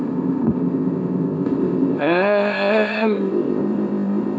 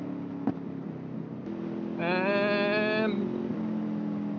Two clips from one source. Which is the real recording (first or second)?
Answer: second